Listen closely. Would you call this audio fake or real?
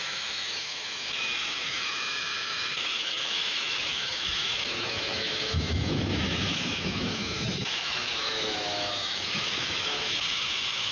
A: fake